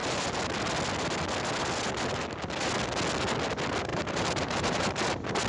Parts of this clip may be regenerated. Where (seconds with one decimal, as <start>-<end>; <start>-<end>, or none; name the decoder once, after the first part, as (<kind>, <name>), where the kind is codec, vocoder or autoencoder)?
3.9-4.9 (vocoder, BigVGAN v2)